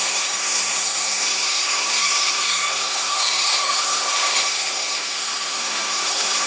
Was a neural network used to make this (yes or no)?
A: yes